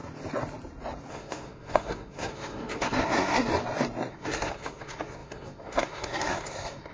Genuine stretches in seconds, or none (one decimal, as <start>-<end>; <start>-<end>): 0.0-1.1; 3.5-4.1